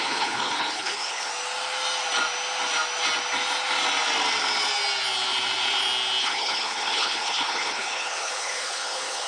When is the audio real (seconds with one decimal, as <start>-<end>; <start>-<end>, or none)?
1.3-6.2